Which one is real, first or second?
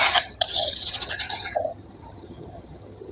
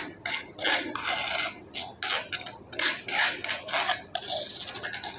second